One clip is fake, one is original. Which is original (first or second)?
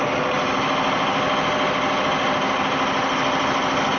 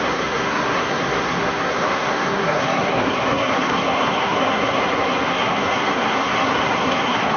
first